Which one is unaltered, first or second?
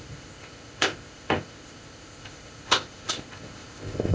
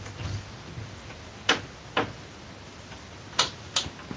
second